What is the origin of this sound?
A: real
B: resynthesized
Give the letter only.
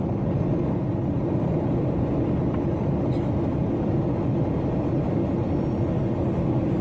A